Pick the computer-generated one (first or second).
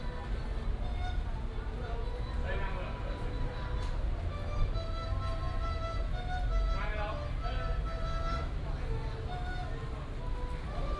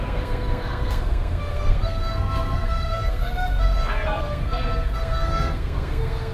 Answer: second